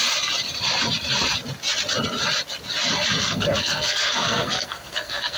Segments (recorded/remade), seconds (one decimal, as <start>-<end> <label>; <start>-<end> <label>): 0.0-3.2 recorded; 3.2-5.4 remade